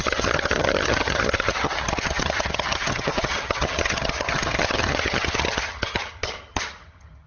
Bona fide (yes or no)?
no